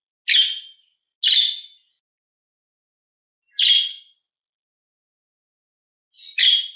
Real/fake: real